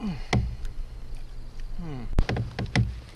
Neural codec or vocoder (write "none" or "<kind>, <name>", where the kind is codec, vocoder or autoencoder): none